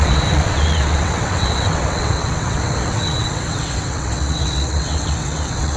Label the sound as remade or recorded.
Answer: remade